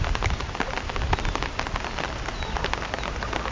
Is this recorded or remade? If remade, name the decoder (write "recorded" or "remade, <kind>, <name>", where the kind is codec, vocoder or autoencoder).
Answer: recorded